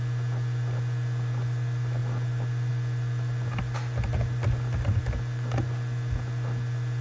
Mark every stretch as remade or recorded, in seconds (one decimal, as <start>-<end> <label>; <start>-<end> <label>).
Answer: 0.0-7.0 recorded